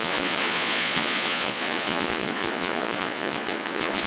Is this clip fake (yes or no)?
yes